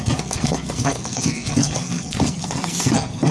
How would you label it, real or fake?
fake